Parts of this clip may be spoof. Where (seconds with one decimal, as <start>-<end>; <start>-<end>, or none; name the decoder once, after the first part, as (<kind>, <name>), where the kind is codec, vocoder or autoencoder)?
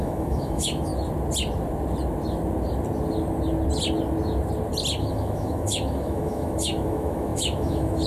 0.0-0.9 (autoencoder, DAC-VAE); 5.0-8.1